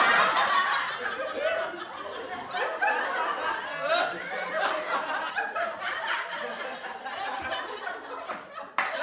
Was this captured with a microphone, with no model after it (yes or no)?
yes